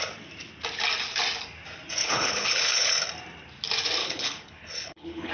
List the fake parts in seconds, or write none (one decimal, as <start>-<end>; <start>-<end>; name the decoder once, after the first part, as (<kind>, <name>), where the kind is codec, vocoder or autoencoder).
2.0-2.9 (codec, HILCodec); 4.0-5.3